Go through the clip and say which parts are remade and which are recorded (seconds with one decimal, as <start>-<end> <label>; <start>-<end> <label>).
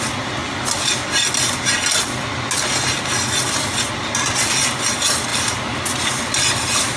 0.0-7.0 recorded